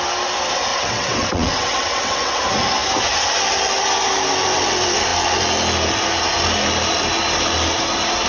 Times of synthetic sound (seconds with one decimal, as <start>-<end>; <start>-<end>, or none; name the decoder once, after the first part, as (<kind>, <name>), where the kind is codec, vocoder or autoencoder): 0.7-2.4 (vocoder, WaveNeXt)